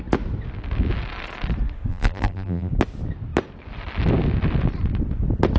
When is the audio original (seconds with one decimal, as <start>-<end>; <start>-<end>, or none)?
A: 0.0-1.9; 2.7-5.6